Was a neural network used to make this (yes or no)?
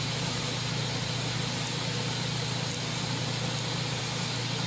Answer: no